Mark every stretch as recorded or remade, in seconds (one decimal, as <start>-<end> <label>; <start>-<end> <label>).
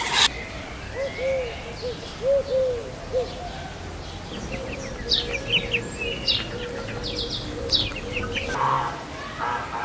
0.0-9.8 recorded